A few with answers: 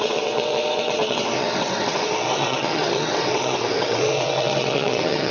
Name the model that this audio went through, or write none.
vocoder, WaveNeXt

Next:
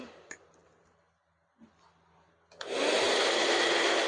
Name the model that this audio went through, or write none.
none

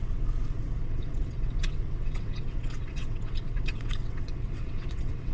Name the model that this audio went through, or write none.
vocoder, WaveNeXt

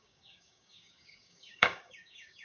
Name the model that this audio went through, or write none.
codec, DAC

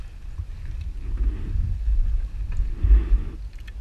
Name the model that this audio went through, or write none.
none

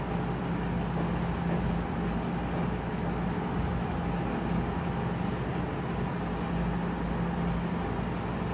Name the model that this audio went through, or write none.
none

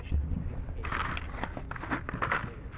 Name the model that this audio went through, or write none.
none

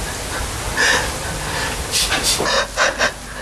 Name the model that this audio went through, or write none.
none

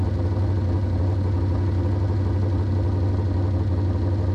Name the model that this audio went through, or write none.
none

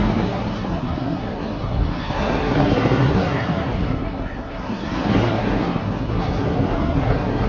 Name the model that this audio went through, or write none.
codec, SNAC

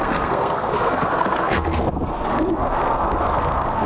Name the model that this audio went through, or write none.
codec, SNAC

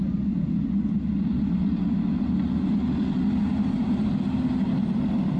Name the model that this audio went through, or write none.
none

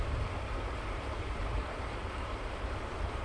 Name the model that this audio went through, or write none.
vocoder, BigVGAN v2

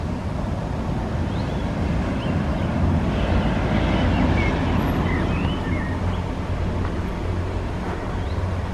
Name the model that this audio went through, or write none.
none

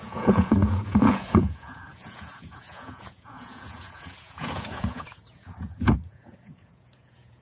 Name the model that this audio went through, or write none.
vocoder, Vocos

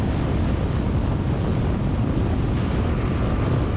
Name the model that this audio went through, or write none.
none